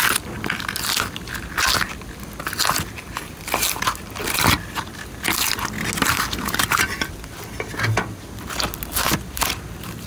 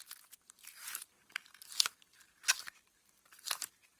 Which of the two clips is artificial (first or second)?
second